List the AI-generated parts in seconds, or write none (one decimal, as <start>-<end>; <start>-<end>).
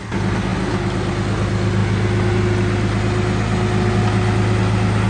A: none